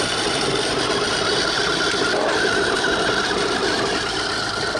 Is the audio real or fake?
real